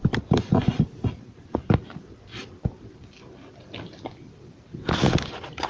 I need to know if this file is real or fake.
real